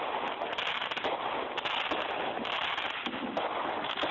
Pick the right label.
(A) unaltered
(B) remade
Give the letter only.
A